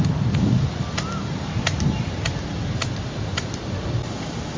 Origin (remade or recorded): recorded